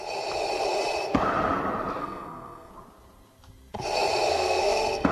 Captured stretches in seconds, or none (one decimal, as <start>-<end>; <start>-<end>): 0.0-2.0; 2.7-4.3